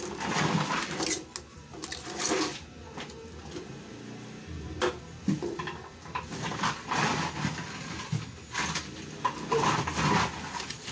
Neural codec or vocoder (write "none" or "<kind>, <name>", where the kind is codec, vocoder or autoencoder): none